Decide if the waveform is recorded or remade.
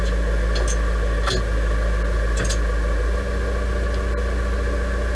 recorded